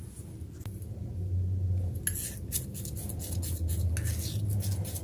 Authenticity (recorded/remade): recorded